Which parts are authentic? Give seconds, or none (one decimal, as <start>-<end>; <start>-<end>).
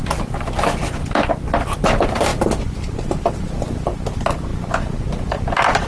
0.0-5.9